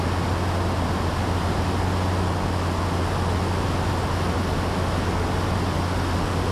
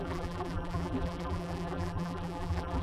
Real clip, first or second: first